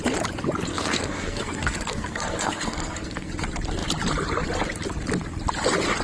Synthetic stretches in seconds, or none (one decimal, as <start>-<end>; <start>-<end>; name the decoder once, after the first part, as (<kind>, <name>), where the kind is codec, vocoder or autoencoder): 0.7-3.3 (codec, SNAC)